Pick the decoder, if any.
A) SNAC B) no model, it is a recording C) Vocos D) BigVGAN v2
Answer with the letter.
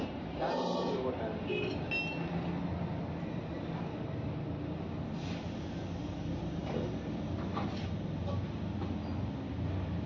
B